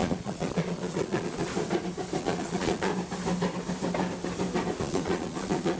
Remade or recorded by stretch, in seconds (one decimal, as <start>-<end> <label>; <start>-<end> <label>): 0.0-1.5 remade; 1.5-2.2 recorded; 2.2-2.9 remade; 2.9-4.8 recorded; 4.8-5.8 remade